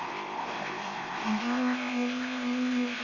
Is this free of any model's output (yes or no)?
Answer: no